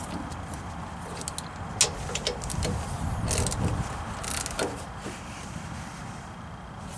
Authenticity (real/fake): real